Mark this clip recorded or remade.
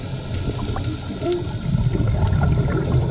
recorded